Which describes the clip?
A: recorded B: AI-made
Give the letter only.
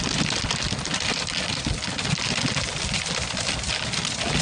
A